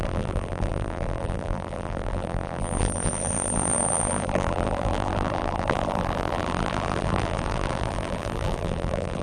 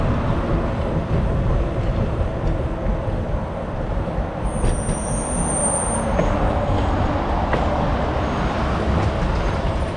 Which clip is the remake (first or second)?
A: first